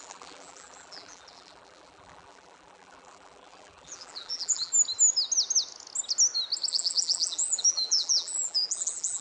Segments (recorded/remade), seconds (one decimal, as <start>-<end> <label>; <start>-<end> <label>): 0.0-4.7 remade; 4.7-6.7 recorded; 6.7-9.2 remade